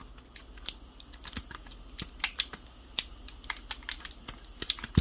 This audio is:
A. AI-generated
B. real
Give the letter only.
B